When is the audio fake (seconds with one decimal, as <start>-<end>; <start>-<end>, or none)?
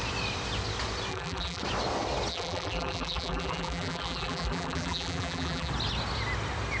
1.1-1.6; 2.3-5.7